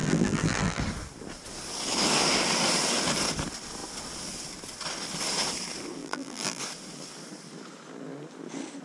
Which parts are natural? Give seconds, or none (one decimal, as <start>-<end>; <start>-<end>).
0.8-6.0; 6.6-8.8